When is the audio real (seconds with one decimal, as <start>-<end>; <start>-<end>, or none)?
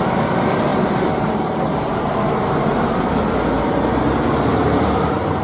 0.0-0.7; 3.2-4.5